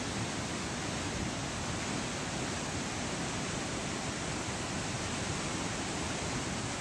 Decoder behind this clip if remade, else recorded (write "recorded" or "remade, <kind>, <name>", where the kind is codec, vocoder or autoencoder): recorded